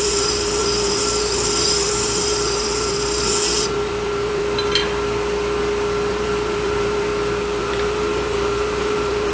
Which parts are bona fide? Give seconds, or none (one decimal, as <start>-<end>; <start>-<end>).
4.4-6.1; 7.1-7.6